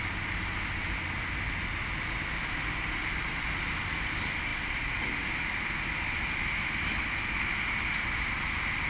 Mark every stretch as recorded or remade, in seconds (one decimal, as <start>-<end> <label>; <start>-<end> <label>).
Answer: 0.0-8.9 recorded